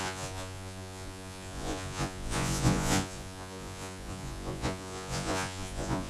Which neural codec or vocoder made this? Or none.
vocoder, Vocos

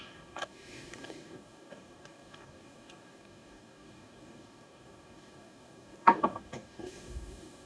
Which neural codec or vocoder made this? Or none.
codec, DAC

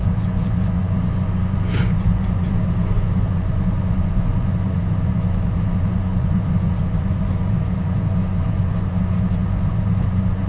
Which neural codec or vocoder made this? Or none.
vocoder, Vocos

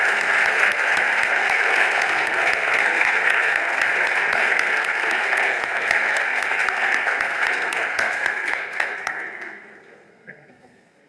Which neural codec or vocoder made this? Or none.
codec, SNAC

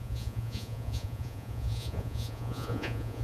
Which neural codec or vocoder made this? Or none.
vocoder, Vocos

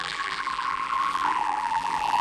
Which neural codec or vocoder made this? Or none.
vocoder, BigVGAN v2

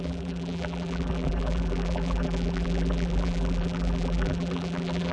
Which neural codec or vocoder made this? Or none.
vocoder, BigVGAN v2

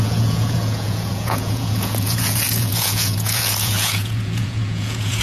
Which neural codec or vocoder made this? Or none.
vocoder, Vocos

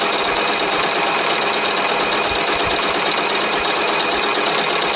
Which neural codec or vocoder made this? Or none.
none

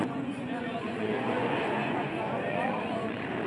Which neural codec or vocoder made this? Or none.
vocoder, Vocos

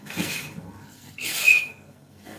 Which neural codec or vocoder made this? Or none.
codec, SNAC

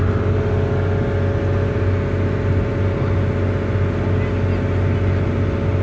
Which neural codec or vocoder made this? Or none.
none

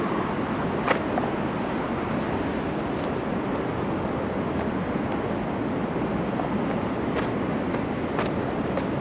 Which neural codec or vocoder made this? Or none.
none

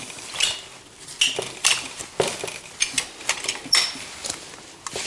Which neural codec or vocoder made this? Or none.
none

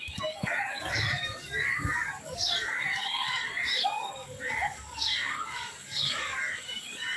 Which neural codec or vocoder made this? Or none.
codec, DAC